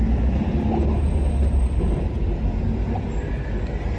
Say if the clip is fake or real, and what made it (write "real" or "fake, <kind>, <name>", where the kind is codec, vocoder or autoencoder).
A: real